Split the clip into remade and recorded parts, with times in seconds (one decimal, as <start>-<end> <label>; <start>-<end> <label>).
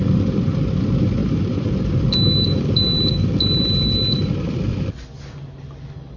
0.0-1.2 recorded; 1.2-4.9 remade; 4.9-6.2 recorded